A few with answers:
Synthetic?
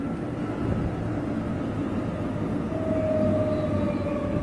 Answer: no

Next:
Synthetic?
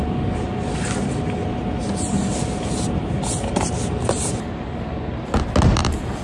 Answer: no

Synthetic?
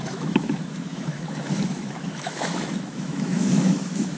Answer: yes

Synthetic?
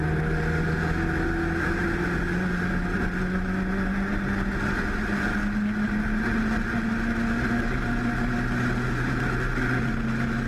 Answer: no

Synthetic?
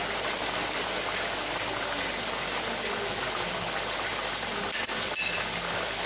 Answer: no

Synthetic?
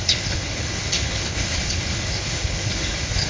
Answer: yes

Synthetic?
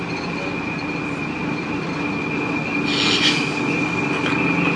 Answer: no